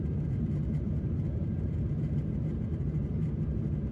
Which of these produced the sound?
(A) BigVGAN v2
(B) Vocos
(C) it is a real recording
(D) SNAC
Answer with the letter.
A